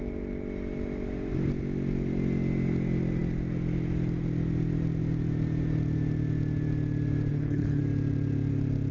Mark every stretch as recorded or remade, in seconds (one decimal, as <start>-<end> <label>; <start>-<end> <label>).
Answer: 0.0-7.3 recorded; 7.3-7.8 remade; 7.8-8.9 recorded